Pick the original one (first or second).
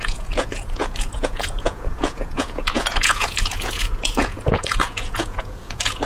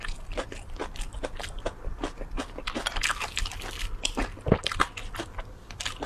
second